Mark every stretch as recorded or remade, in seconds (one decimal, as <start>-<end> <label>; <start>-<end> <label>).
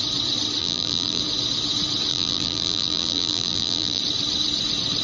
0.0-0.6 recorded; 0.6-1.2 remade; 1.2-2.1 recorded; 2.1-4.0 remade; 4.0-5.0 recorded